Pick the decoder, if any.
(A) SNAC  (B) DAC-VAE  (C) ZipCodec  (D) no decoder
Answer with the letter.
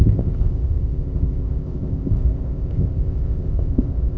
C